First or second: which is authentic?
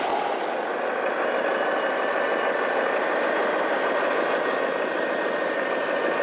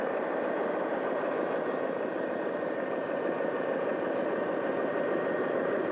first